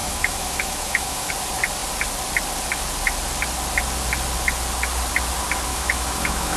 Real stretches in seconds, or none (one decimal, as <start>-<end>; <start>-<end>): 1.3-5.7